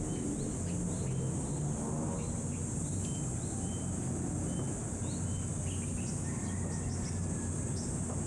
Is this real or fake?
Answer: real